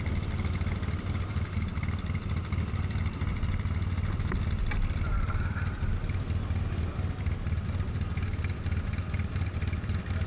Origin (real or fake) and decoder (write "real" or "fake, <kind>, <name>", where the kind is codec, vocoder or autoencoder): real